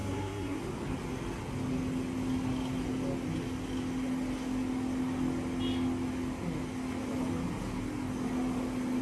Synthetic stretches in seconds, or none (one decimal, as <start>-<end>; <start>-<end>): 0.0-0.6